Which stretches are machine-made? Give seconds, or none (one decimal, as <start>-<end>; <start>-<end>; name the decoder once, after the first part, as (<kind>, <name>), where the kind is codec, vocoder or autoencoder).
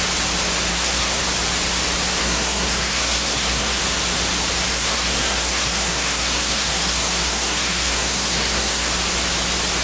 0.7-1.2 (codec, SNAC); 2.2-3.8; 4.7-8.9